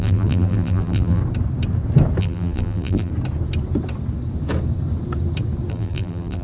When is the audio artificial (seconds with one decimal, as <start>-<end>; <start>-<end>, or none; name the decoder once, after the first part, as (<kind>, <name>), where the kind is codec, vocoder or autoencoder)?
0.0-1.2 (vocoder, BigVGAN v2); 2.2-3.1; 5.7-6.4